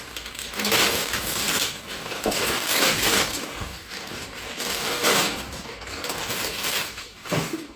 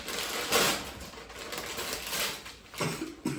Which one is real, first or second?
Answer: second